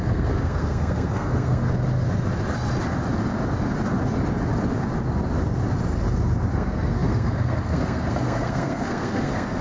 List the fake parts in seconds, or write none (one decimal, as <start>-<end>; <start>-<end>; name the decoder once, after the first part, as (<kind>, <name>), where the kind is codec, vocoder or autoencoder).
0.0-1.6 (codec, SNAC); 6.5-9.6